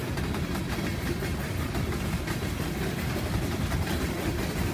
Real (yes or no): yes